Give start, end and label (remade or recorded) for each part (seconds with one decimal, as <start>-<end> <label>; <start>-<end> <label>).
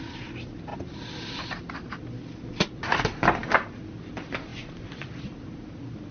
0.0-6.1 recorded